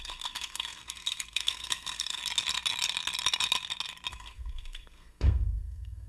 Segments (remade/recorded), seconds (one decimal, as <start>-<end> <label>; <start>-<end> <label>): 0.0-2.2 remade; 2.2-4.1 recorded; 4.1-6.1 remade

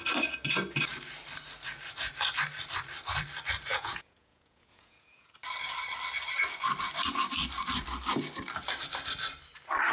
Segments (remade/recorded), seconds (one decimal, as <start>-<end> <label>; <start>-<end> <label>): 0.0-3.7 recorded; 3.7-5.3 remade; 5.3-9.9 recorded

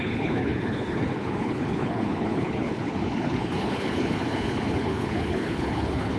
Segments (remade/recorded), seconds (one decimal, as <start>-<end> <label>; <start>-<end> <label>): 0.0-6.2 remade

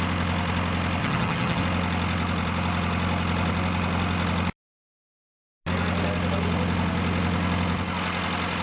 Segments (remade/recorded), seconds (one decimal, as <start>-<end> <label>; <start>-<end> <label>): 0.0-1.0 recorded; 1.0-1.6 remade; 1.6-8.6 recorded

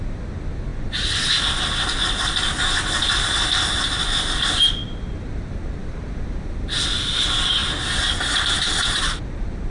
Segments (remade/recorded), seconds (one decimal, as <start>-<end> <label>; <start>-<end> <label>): 0.0-5.8 recorded; 5.8-6.4 remade; 6.4-7.6 recorded; 7.6-9.0 remade; 9.0-9.7 recorded

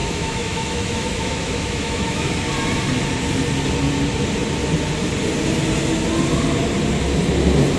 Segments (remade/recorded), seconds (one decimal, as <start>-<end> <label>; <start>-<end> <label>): 0.0-2.3 remade; 2.3-7.8 recorded